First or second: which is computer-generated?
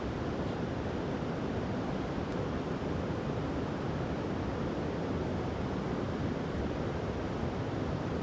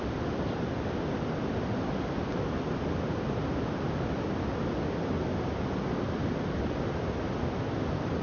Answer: first